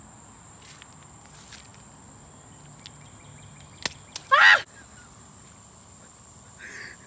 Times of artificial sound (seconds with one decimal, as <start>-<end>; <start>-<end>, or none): none